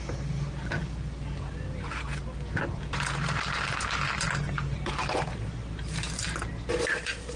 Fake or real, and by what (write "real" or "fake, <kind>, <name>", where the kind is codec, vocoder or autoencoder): fake, vocoder, BigVGAN v2